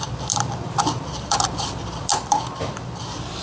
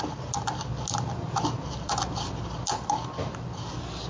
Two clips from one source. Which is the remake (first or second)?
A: first